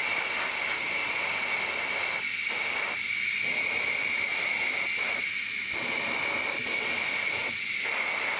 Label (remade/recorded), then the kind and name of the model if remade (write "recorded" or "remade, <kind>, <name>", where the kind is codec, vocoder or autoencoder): recorded